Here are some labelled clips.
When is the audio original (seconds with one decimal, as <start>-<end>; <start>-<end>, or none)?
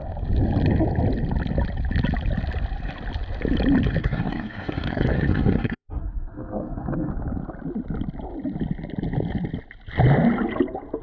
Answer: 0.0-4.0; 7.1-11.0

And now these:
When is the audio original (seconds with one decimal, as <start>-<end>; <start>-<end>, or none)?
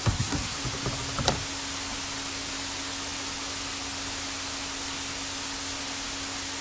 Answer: 0.6-6.6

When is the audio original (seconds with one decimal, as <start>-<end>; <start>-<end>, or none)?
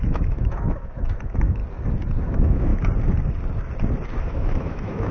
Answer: 1.6-2.2; 2.7-4.2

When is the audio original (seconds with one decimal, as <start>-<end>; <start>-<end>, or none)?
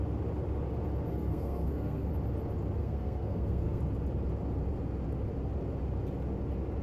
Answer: 0.0-1.1; 2.1-2.8; 3.8-6.8